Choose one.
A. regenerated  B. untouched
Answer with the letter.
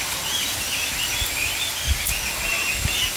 B